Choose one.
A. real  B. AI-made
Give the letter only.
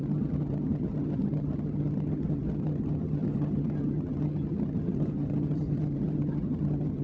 B